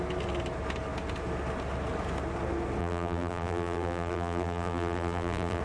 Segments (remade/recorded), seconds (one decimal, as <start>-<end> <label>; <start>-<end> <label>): 0.0-2.8 recorded; 2.8-5.6 remade